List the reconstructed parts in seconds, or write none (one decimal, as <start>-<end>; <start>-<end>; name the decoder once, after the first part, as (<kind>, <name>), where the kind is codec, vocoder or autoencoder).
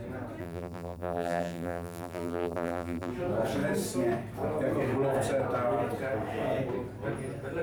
0.4-3.1 (vocoder, BigVGAN v2)